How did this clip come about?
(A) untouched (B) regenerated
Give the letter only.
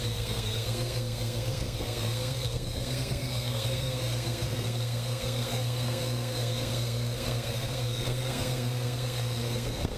B